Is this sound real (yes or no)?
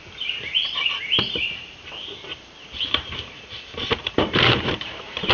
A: no